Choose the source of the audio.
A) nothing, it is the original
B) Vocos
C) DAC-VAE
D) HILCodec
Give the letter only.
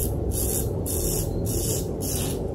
A